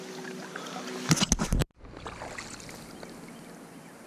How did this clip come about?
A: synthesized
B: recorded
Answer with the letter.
B